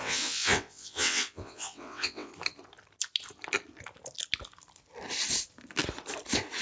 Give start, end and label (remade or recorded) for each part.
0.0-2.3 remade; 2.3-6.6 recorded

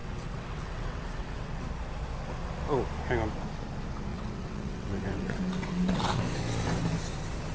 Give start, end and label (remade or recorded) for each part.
0.0-1.6 remade; 1.6-4.1 recorded; 4.1-6.2 remade; 6.2-7.5 recorded

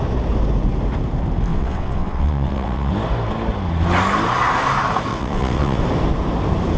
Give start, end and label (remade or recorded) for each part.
0.0-1.5 recorded; 1.5-2.9 remade; 2.9-5.1 recorded; 5.1-5.8 remade; 5.8-6.8 recorded

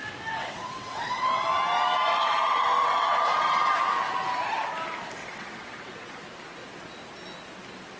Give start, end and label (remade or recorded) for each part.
0.0-0.4 recorded; 0.4-1.5 remade; 1.5-2.1 recorded; 2.1-3.9 remade; 3.9-5.2 recorded; 5.2-6.1 remade; 6.1-8.0 recorded

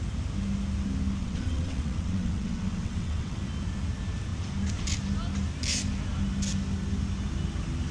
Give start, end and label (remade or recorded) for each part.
0.0-1.2 recorded; 1.2-3.4 remade; 3.4-7.9 recorded

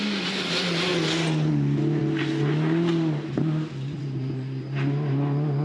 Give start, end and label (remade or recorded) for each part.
0.0-5.6 recorded

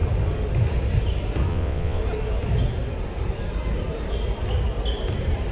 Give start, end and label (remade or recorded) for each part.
0.0-1.5 recorded; 1.5-2.0 remade; 2.0-5.5 recorded